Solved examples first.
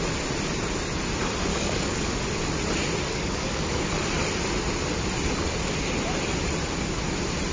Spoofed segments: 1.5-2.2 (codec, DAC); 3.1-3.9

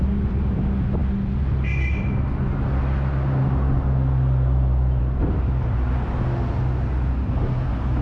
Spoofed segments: none

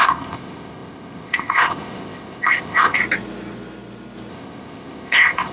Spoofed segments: 0.0-3.0 (codec, ZipCodec); 4.3-5.5

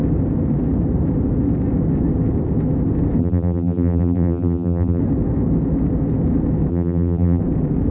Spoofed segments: 3.2-5.0 (vocoder, BigVGAN v2); 6.7-7.4

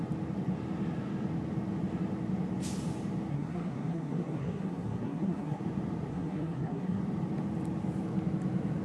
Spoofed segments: 3.3-5.6 (codec, SNAC); 6.1-7.0